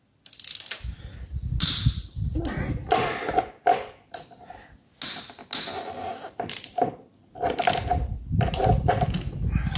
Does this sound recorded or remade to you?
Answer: recorded